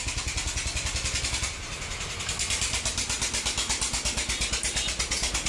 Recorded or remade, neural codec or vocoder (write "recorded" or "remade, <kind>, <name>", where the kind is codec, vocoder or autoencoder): recorded